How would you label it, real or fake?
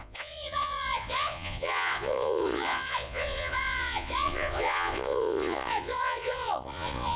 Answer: fake